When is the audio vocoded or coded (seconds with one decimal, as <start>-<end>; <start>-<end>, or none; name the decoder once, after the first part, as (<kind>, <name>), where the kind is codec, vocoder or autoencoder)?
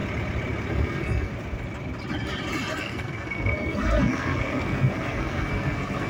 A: 0.7-1.3 (codec, SNAC); 2.8-6.1